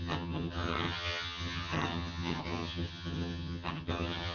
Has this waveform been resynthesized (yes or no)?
yes